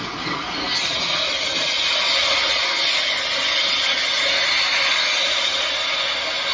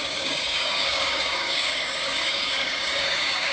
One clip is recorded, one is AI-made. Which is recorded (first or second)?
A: first